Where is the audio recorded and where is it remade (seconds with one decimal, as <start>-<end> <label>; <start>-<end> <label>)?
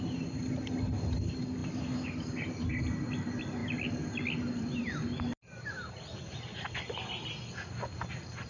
0.0-8.5 recorded